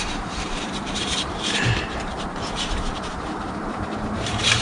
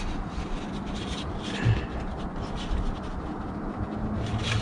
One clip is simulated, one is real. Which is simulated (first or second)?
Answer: first